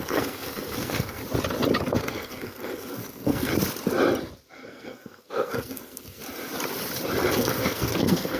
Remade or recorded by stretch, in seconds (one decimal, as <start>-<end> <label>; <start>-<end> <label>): 0.0-1.2 remade; 1.2-1.9 recorded; 1.9-3.5 remade; 3.5-4.5 recorded; 4.5-6.2 remade; 6.2-7.3 recorded; 7.3-8.4 remade